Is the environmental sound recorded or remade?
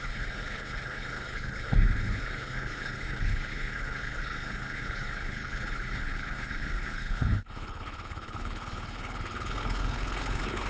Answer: remade